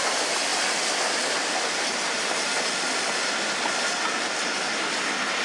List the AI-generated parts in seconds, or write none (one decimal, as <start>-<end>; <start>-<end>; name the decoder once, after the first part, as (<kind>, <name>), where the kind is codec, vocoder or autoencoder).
none